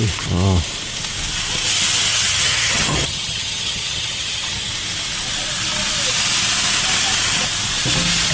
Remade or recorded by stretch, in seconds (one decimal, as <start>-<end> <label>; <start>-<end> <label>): 0.0-2.1 recorded; 2.1-4.7 remade; 4.7-8.3 recorded